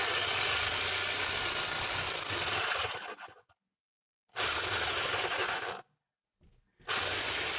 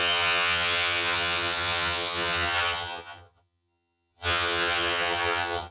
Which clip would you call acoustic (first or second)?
first